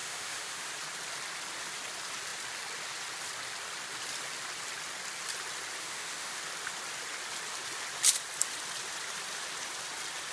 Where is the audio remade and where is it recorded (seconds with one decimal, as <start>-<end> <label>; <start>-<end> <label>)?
0.0-0.7 remade; 0.7-5.8 recorded; 5.8-6.4 remade; 6.4-10.3 recorded